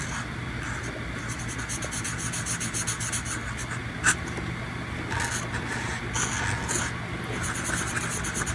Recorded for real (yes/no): yes